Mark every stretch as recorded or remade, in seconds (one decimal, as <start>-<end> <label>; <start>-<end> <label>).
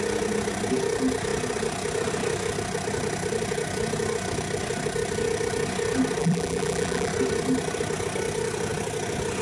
0.0-6.2 recorded; 6.2-7.1 remade; 7.1-9.4 recorded